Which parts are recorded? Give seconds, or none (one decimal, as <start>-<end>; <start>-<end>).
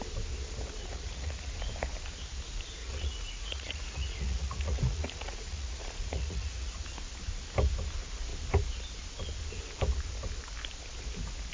0.0-0.8; 1.5-2.8; 6.7-11.5